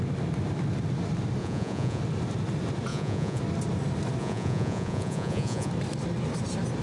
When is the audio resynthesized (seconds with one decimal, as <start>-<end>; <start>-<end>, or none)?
1.4-2.0; 2.9-3.4; 4.2-5.7